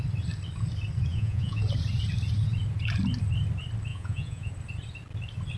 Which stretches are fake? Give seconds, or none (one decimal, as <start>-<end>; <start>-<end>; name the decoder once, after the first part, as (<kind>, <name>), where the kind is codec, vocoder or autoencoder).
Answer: 1.1-1.6 (vocoder, Vocos); 3.9-4.5